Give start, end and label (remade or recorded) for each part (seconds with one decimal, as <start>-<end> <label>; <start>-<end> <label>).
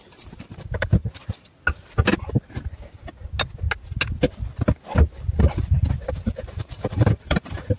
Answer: 0.0-1.0 remade; 1.0-5.4 recorded; 5.4-7.8 remade